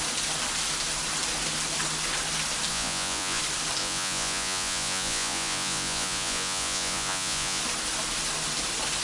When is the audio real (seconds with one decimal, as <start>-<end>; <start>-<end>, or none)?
0.0-2.7; 3.4-3.8; 7.6-9.0